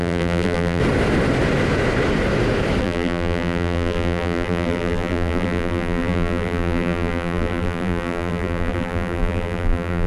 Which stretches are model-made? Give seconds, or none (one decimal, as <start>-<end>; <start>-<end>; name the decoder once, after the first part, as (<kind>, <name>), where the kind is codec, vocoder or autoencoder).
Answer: 0.0-0.8 (vocoder, BigVGAN v2); 2.8-10.1